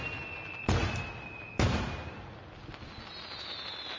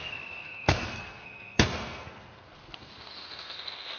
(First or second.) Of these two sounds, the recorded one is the first